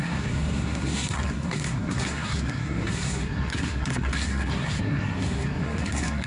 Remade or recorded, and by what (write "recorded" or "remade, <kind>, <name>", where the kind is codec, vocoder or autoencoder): remade, codec, SNAC